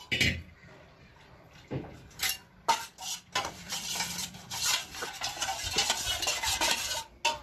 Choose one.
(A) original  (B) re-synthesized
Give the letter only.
A